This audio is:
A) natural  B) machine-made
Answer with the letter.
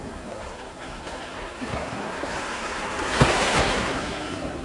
B